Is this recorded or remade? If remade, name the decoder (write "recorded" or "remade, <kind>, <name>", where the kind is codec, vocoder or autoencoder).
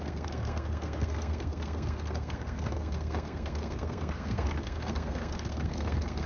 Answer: remade, codec, SNAC